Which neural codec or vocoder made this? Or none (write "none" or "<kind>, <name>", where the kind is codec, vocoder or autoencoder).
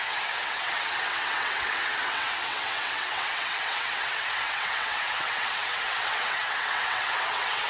vocoder, WaveNeXt